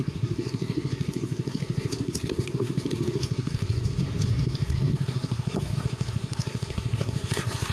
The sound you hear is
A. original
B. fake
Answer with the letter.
B